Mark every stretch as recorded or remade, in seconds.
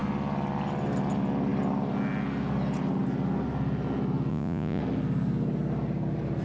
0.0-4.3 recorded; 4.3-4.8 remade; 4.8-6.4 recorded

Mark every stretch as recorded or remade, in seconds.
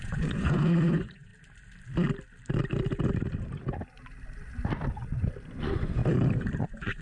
0.0-1.3 remade; 1.3-5.5 recorded; 5.5-6.0 remade; 6.0-6.6 recorded; 6.6-7.0 remade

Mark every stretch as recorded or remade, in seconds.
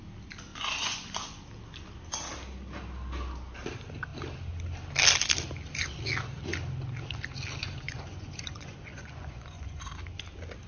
0.0-0.5 recorded; 0.5-1.4 remade; 1.4-7.6 recorded; 7.6-9.9 remade; 9.9-10.7 recorded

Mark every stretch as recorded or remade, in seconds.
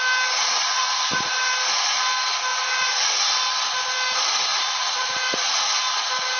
0.0-0.4 recorded; 0.4-1.5 remade; 1.5-2.5 recorded; 2.5-3.1 remade; 3.1-4.5 recorded; 4.5-5.8 remade; 5.8-6.4 recorded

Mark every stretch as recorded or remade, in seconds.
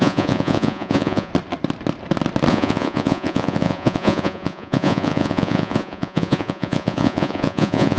0.0-1.3 remade; 1.3-2.5 recorded; 2.5-8.0 remade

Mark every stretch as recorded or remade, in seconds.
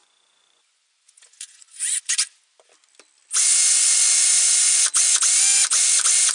0.0-2.0 remade; 2.0-6.3 recorded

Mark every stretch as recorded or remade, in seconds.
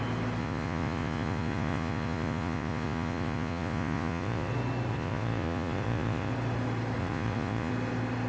0.0-0.4 recorded; 0.4-4.5 remade; 4.5-4.9 recorded; 4.9-6.3 remade; 6.3-7.0 recorded; 7.0-7.7 remade; 7.7-8.3 recorded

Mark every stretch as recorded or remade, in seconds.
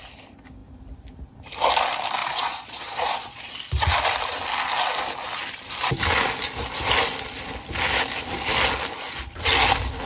0.0-2.2 recorded; 2.2-3.5 remade; 3.5-10.1 recorded